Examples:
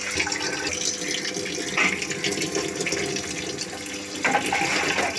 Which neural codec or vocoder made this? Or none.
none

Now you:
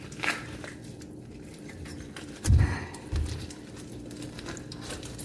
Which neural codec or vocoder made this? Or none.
vocoder, BigVGAN v2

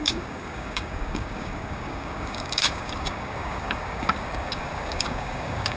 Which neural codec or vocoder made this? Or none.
codec, DAC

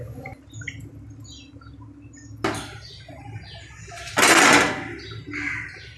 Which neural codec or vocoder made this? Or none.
none